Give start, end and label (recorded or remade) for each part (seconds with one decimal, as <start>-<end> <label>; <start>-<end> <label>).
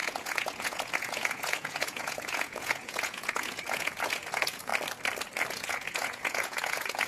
0.0-4.7 remade; 4.7-5.5 recorded; 5.5-7.1 remade